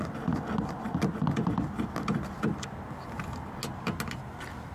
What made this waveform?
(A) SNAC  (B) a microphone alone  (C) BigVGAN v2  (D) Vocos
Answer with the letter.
B